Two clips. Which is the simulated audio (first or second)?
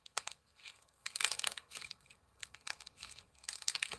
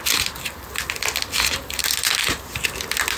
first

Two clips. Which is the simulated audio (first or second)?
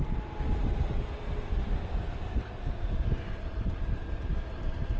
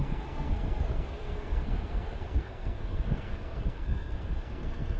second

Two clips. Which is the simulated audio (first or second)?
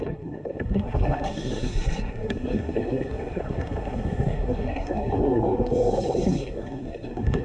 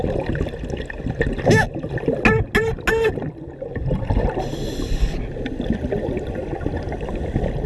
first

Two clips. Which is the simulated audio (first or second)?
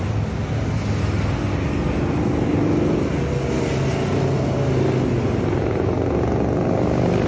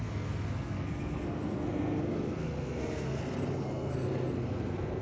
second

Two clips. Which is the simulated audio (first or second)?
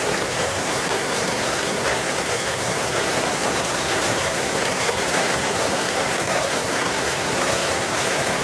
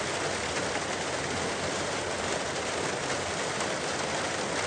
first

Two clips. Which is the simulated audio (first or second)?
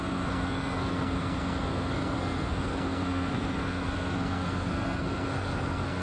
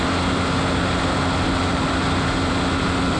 first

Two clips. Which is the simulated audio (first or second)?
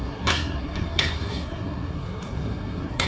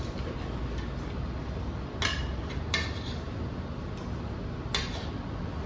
first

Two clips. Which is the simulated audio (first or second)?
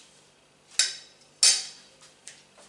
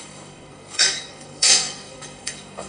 second